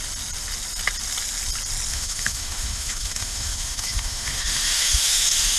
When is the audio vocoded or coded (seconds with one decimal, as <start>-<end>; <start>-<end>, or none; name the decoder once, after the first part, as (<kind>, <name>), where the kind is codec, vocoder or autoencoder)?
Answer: 1.9-5.6 (autoencoder, DAC-VAE)